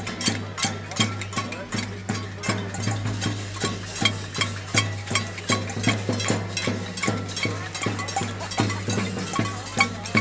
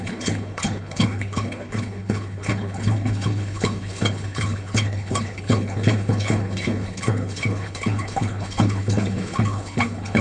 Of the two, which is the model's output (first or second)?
second